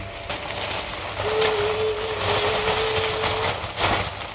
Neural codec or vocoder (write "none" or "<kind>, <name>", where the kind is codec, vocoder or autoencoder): none